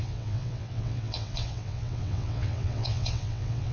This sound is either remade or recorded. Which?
remade